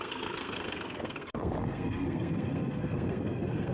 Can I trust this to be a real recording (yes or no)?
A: no